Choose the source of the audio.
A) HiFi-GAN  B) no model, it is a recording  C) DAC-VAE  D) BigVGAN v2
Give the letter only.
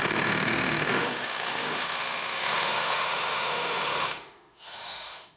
C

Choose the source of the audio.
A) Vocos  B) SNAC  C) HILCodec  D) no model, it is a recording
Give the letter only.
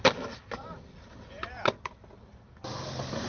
D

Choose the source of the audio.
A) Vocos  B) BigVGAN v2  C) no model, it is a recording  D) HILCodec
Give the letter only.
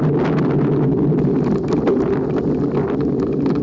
C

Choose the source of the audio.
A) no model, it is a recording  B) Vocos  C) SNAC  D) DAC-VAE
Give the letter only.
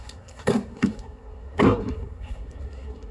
C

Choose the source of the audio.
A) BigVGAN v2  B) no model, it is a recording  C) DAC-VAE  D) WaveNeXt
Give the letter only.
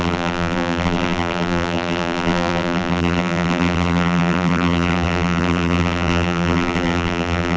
A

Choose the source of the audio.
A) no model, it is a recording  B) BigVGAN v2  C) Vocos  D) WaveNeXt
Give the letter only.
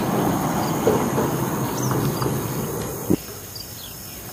A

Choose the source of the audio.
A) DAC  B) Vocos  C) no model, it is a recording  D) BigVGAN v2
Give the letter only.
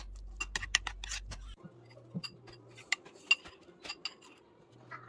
C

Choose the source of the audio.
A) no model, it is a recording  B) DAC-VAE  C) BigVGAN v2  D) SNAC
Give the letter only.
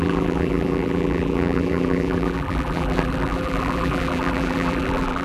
C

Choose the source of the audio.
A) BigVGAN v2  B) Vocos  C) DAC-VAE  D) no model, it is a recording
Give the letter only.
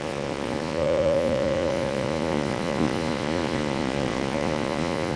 B